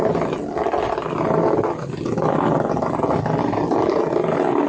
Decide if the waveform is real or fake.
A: real